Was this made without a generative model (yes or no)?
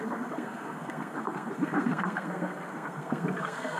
no